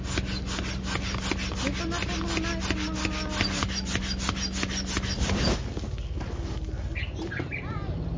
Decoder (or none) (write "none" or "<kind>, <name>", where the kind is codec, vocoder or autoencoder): none